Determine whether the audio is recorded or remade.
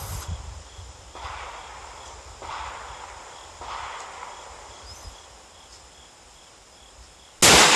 recorded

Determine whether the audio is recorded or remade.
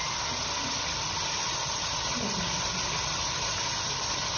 recorded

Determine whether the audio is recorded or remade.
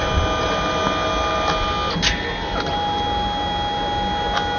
recorded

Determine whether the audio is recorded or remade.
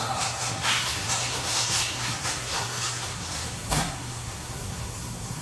remade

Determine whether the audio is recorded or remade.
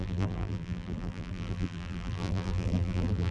remade